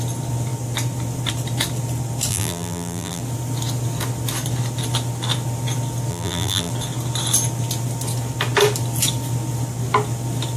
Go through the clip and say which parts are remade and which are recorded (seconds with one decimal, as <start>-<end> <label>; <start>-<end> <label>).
0.0-2.3 recorded; 2.3-3.2 remade; 3.2-6.1 recorded; 6.1-6.7 remade; 6.7-10.6 recorded